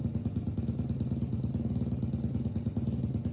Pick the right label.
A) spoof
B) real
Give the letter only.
B